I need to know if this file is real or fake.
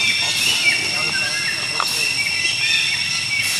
real